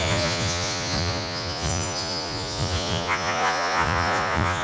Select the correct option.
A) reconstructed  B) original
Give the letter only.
A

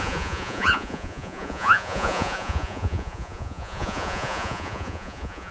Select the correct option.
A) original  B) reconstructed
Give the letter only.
B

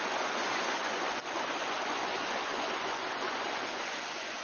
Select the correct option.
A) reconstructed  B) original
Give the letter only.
A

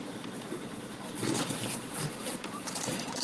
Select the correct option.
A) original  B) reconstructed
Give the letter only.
B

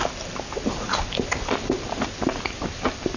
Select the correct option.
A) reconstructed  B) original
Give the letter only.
B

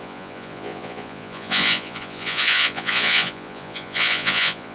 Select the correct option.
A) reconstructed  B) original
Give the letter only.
A